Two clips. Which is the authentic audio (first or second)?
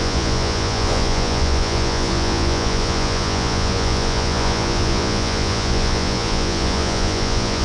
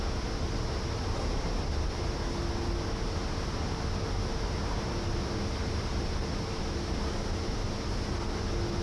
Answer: second